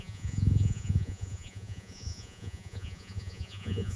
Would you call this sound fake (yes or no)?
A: yes